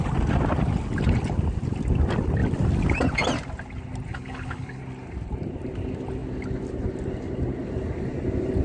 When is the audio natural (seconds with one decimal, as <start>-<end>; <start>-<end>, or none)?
0.0-4.1; 4.8-8.6